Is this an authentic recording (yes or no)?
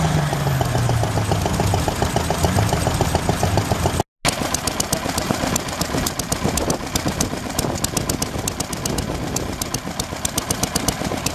yes